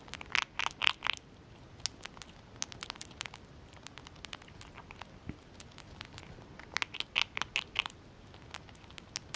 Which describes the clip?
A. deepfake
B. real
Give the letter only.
B